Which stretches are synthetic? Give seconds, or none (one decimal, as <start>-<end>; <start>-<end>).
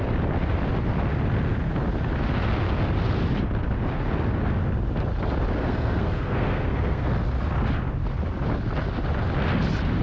5.6-7.1